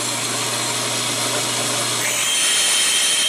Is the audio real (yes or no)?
yes